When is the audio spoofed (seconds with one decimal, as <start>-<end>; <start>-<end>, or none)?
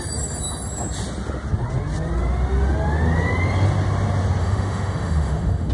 4.4-5.7